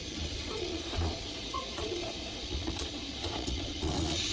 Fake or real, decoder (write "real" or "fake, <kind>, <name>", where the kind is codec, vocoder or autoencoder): fake, vocoder, Vocos